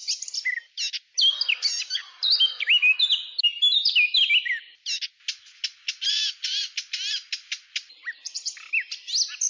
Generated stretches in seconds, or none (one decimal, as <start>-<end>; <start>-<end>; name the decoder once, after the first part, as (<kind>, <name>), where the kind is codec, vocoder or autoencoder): none